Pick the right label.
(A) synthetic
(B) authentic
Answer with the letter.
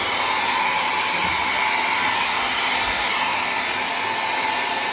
B